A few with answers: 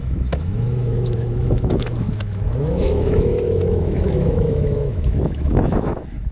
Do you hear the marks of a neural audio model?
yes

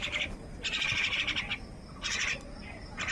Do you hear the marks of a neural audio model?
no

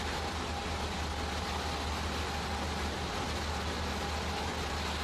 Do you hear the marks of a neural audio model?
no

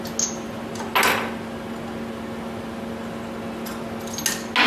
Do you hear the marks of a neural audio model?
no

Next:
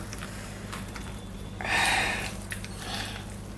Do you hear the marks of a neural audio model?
no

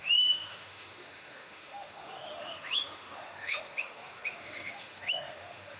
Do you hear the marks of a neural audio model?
yes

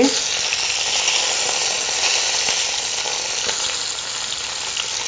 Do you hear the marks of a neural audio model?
no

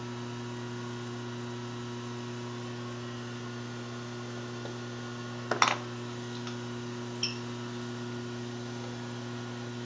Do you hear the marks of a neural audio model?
no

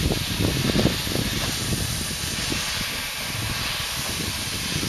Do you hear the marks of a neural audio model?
no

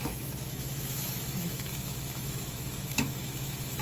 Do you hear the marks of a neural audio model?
yes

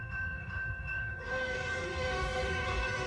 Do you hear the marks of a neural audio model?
yes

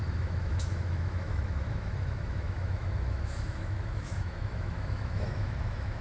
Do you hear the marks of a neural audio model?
yes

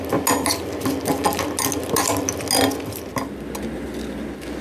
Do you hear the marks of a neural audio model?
no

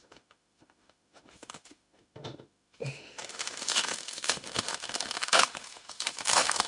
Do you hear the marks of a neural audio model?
yes